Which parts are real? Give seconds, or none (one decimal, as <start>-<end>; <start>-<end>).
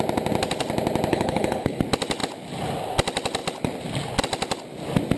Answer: 0.0-1.1; 1.8-5.2